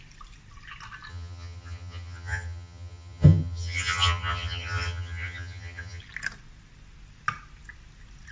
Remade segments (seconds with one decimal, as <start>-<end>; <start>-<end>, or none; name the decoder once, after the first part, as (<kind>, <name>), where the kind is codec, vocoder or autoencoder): 1.1-6.0 (vocoder, HiFi-GAN)